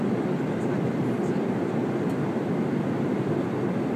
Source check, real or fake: real